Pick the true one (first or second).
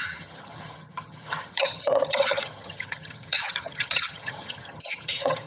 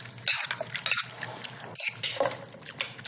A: second